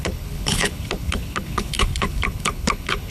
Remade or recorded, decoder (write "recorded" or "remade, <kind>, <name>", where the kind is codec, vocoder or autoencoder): remade, codec, HILCodec